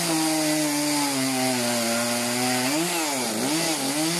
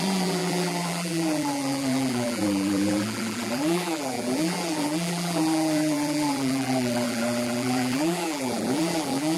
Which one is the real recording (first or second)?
first